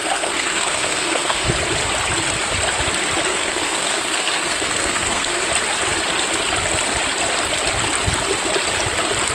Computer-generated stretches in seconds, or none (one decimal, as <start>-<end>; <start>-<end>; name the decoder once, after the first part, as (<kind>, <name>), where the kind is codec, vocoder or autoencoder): 0.0-1.5 (codec, SNAC); 3.3-5.4